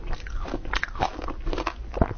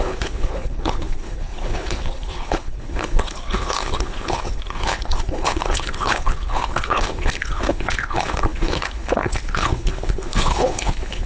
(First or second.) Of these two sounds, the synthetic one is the second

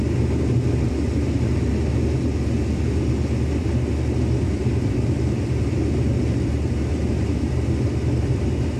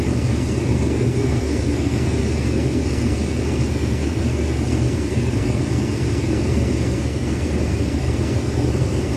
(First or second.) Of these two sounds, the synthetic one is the second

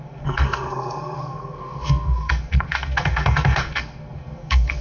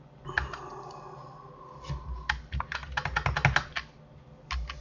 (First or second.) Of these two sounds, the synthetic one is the first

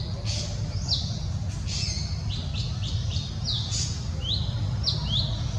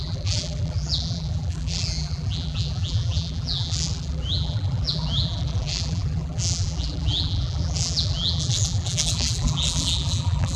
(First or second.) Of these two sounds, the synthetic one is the second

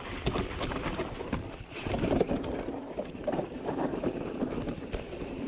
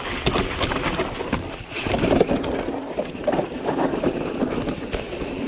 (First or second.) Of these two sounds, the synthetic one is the first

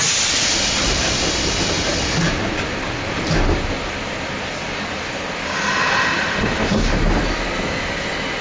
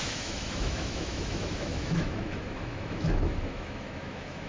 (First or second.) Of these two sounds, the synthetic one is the second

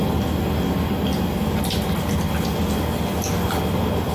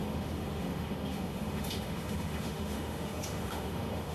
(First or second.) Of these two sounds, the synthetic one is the second